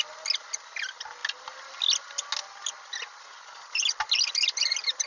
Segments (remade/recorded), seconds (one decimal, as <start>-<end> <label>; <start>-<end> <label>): 0.0-5.1 recorded